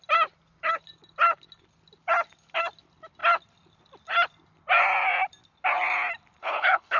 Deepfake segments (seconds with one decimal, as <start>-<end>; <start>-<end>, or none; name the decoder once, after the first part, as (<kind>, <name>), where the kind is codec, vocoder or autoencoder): 6.4-7.0 (codec, HILCodec)